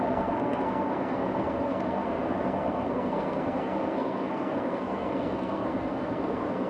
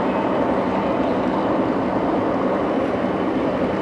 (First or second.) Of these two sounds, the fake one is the first